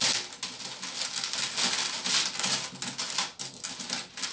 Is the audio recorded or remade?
recorded